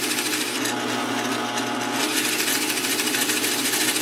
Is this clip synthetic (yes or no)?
no